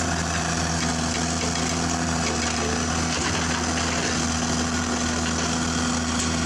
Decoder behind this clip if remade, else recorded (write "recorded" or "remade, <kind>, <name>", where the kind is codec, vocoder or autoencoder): recorded